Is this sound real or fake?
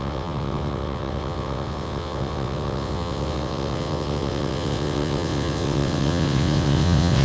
fake